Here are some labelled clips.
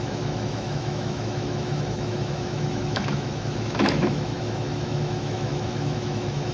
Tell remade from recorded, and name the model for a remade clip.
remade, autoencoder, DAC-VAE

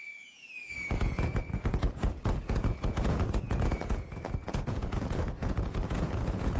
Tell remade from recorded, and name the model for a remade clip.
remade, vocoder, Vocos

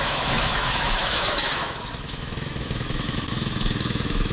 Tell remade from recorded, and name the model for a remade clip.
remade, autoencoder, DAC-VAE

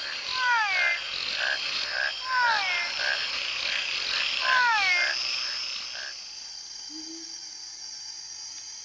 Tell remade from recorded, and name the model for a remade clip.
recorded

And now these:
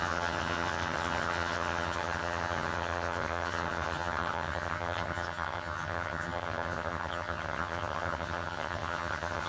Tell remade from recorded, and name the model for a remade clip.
remade, vocoder, HiFi-GAN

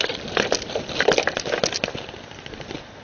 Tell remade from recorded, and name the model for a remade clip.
recorded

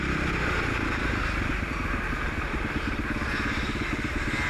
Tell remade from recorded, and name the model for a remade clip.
remade, vocoder, BigVGAN v2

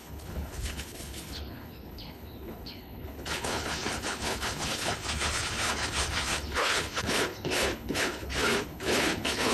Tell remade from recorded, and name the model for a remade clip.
remade, codec, HILCodec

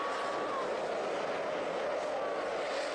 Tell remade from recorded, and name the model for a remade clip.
recorded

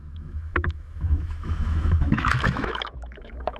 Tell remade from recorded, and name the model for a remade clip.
remade, autoencoder, DAC-VAE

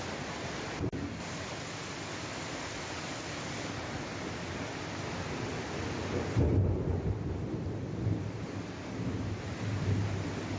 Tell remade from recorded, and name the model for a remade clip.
recorded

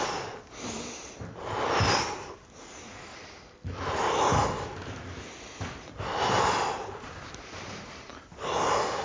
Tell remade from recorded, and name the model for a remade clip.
recorded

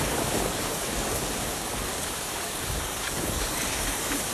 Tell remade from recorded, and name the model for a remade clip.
remade, codec, DAC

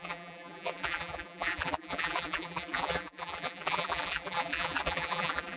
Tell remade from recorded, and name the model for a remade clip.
remade, vocoder, BigVGAN v2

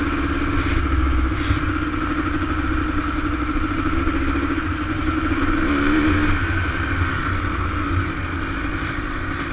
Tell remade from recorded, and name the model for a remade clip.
recorded